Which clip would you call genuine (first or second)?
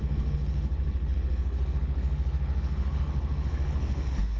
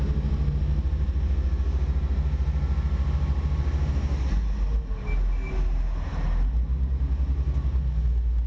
second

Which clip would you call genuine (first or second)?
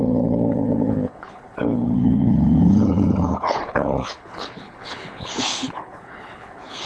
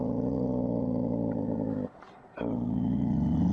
second